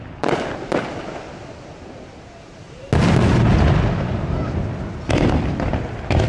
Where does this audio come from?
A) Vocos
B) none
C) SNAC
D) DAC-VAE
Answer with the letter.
B